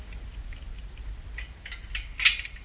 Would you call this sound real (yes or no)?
yes